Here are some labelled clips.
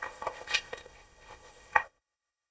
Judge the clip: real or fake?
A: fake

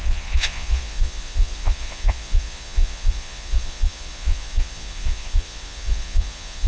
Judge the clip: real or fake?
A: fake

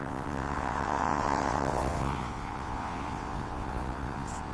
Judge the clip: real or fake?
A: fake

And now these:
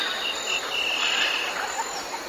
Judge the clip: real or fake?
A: real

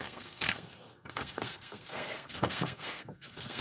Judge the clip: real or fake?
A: fake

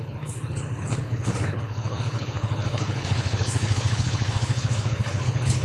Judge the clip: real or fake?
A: fake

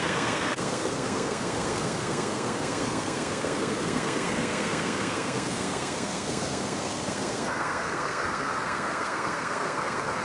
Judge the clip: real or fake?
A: fake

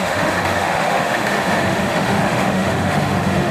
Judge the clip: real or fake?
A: fake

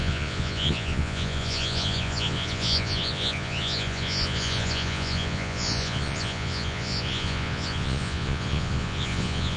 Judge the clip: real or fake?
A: fake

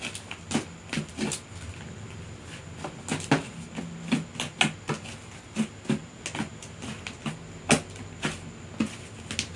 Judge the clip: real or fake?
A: real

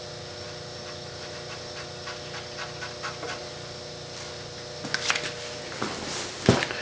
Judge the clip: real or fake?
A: real